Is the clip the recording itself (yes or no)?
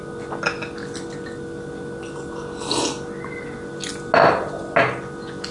yes